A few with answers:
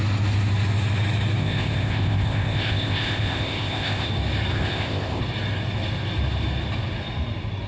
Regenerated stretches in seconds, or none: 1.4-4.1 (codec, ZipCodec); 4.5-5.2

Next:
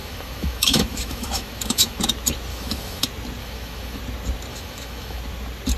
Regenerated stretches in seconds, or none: 0.0-2.0 (autoencoder, DAC-VAE); 2.5-3.0; 3.4-4.0; 4.5-5.2

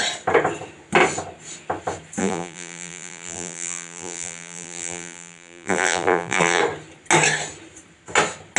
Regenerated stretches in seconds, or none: 2.2-6.6 (vocoder, BigVGAN v2)

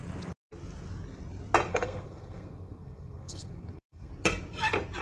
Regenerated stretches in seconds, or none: 1.7-4.1 (codec, SNAC)

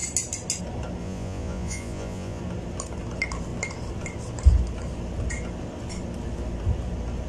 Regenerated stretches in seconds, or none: 1.0-2.4 (vocoder, Vocos)

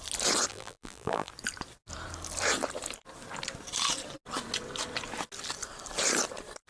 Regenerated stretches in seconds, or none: 0.5-1.3 (vocoder, BigVGAN v2)